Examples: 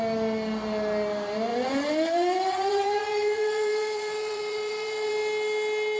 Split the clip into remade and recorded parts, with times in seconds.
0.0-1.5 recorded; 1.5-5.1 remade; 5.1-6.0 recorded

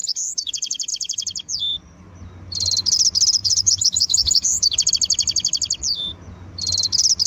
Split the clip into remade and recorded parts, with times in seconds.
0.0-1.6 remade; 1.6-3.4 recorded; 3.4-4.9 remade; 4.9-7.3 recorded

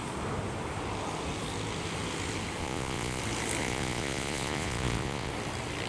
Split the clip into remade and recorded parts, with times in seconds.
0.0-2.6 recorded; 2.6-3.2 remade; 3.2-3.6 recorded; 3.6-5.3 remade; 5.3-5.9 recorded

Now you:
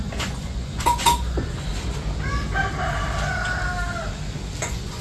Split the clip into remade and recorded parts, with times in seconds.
0.0-1.7 remade; 1.7-4.6 recorded; 4.6-5.0 remade

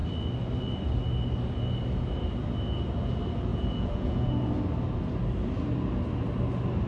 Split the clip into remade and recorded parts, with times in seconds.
0.0-3.5 recorded; 3.5-4.5 remade; 4.5-6.9 recorded